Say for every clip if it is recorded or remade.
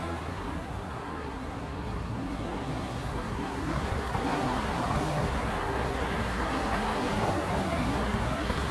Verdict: remade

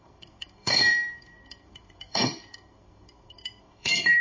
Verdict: remade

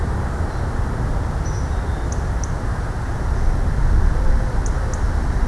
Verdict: recorded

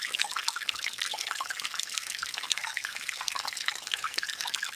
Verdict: remade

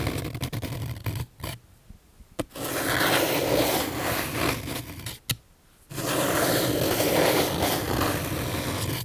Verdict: recorded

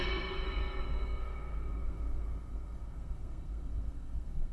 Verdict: remade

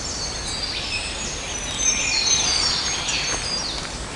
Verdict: recorded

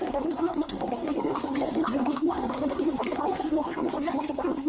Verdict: remade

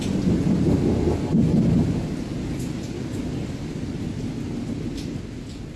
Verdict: recorded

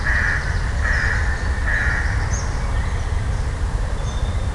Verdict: recorded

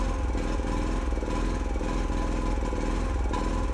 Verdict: recorded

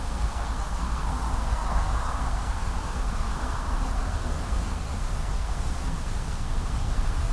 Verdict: remade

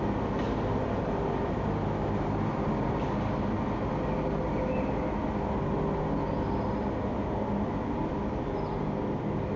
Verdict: recorded